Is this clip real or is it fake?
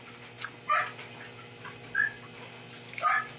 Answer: real